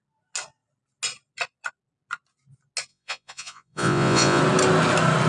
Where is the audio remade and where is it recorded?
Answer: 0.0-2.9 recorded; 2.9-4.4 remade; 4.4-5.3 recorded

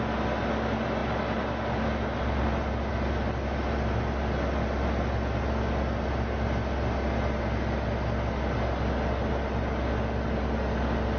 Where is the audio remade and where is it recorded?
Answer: 0.0-11.2 recorded

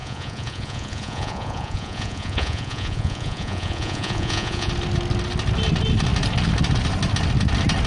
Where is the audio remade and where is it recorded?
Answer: 0.0-4.7 remade; 4.7-7.9 recorded

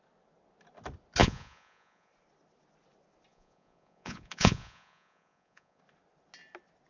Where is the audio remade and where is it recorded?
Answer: 0.0-1.2 recorded; 1.2-2.1 remade; 2.1-3.3 recorded; 3.3-5.8 remade; 5.8-6.9 recorded

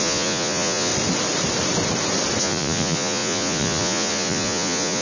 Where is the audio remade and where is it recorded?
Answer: 0.0-0.9 remade; 0.9-2.4 recorded; 2.4-5.0 remade

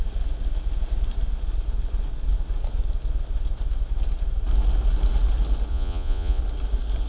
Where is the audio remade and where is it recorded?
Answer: 0.0-5.7 recorded; 5.7-6.4 remade; 6.4-7.1 recorded

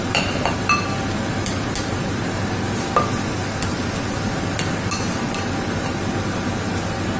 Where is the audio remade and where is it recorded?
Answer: 0.0-7.2 recorded

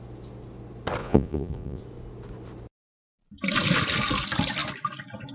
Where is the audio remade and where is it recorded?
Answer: 0.0-1.0 recorded; 1.0-1.8 remade; 1.8-5.3 recorded